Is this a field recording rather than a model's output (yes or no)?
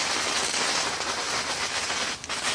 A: yes